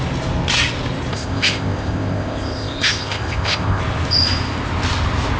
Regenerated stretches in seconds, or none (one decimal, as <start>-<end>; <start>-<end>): 1.1-3.8